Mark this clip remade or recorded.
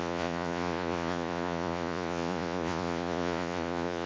remade